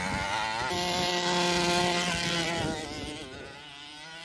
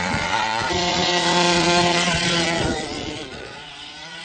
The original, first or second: first